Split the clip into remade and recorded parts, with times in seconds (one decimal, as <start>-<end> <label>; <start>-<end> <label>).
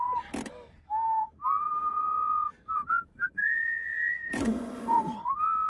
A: 0.0-3.4 recorded; 3.4-5.3 remade; 5.3-5.7 recorded